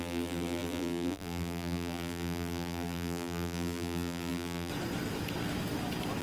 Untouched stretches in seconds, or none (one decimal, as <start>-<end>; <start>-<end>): 4.7-6.2